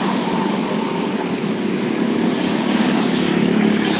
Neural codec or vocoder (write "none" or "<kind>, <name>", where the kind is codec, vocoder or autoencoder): codec, DAC